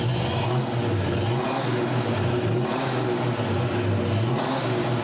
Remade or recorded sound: recorded